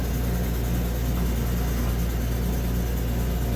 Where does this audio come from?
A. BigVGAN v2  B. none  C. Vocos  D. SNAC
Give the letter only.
B